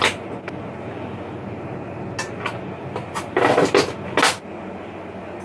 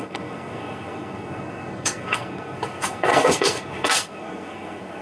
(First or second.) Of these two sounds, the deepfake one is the second